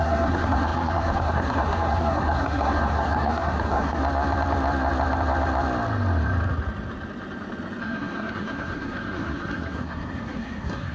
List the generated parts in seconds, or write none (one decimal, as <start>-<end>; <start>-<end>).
0.0-4.0; 7.8-10.9